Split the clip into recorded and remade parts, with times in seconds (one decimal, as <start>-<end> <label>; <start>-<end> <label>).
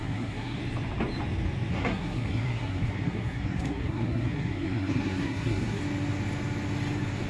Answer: 0.0-0.6 remade; 0.6-1.7 recorded; 1.7-5.8 remade; 5.8-7.3 recorded